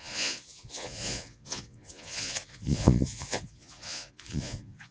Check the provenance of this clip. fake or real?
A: fake